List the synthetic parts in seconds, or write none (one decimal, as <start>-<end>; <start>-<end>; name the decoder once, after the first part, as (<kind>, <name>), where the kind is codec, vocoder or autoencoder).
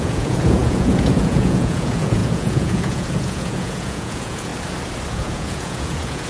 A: 0.0-4.5 (vocoder, Vocos); 5.1-6.3